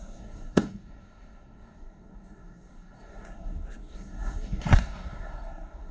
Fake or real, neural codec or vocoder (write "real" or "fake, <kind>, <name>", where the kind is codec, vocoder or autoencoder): fake, codec, SNAC